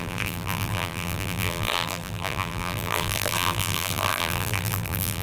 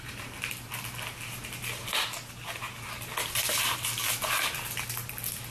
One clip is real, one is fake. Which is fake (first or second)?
first